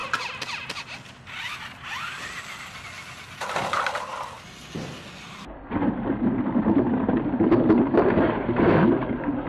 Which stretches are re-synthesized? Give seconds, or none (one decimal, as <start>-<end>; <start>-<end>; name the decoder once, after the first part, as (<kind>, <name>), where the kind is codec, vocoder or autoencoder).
none